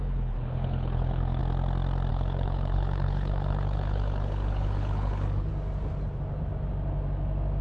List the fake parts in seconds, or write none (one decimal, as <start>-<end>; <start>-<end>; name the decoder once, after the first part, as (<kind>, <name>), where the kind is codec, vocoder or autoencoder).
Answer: 0.0-1.4 (codec, HILCodec); 2.1-5.5